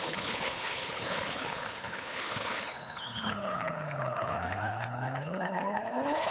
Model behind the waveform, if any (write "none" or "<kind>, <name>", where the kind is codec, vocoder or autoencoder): codec, HILCodec